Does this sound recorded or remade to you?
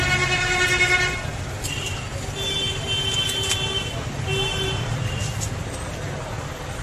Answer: recorded